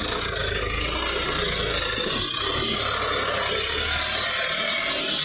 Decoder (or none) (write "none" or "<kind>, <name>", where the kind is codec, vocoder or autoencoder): none